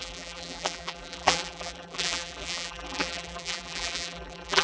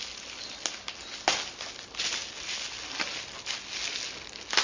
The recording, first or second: second